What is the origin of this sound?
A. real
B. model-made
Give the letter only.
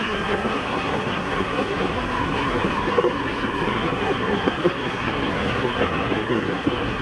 B